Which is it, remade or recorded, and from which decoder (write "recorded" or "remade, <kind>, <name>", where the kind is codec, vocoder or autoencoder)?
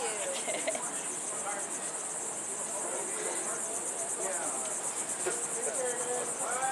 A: recorded